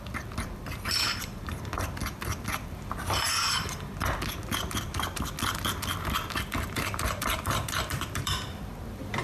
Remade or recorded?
remade